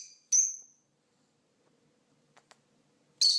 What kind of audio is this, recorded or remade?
recorded